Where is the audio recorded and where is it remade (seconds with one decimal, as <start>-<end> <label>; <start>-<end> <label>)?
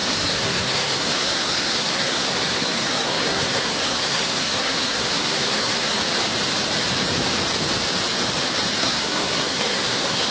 0.0-6.0 remade; 6.0-8.8 recorded; 8.8-10.3 remade